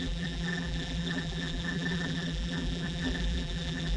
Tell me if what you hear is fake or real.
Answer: fake